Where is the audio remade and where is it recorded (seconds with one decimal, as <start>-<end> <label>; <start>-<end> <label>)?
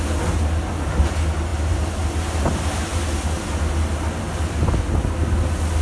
0.0-5.8 recorded